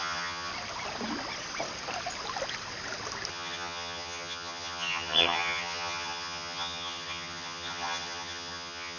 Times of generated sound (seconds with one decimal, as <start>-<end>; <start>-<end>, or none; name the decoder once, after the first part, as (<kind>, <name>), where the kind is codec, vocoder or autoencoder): 0.0-0.5 (vocoder, HiFi-GAN); 3.3-9.0